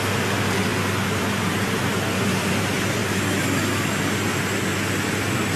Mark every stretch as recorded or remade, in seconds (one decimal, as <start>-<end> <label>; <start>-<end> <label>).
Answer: 0.0-5.6 recorded